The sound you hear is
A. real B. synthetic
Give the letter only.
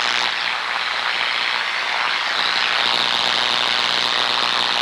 A